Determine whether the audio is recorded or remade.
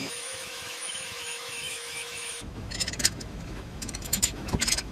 remade